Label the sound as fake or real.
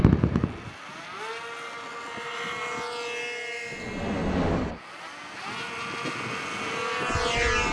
real